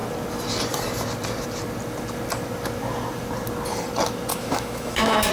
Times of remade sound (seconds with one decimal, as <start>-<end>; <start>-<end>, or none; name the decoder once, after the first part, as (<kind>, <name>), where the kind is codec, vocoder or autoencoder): 4.3-5.3 (autoencoder, DAC-VAE)